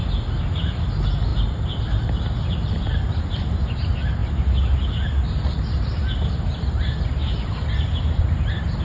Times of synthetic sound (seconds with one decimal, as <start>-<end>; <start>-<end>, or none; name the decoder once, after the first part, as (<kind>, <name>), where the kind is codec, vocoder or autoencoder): 1.3-3.2 (vocoder, BigVGAN v2)